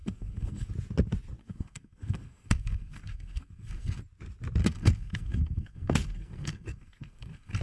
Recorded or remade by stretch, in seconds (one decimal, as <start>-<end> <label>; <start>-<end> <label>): 0.0-0.7 remade; 0.7-1.4 recorded; 1.4-4.0 remade; 4.0-4.6 recorded; 4.6-7.6 remade